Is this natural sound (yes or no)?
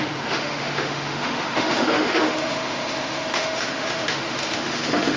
no